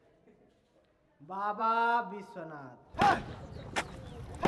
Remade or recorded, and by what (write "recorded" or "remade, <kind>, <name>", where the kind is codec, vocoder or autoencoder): remade, vocoder, BigVGAN v2